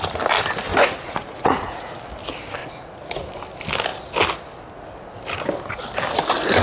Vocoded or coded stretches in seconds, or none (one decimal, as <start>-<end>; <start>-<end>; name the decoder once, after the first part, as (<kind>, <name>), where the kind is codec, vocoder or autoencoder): 0.7-1.9 (vocoder, Vocos); 2.6-3.3